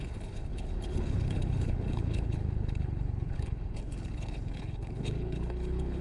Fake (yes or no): yes